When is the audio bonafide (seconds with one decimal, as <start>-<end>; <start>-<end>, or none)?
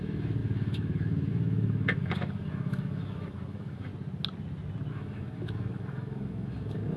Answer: 3.9-4.9